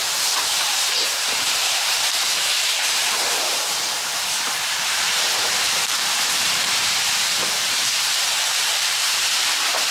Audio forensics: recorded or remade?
remade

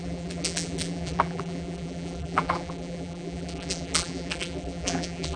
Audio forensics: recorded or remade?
remade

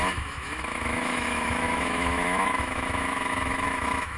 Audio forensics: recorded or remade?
remade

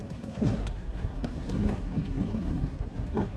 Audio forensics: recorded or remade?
remade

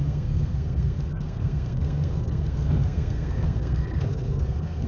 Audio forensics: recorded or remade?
remade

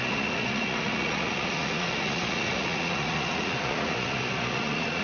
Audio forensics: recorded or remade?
remade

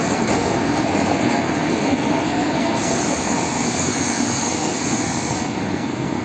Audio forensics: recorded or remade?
remade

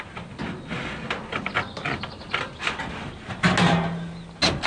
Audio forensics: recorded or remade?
recorded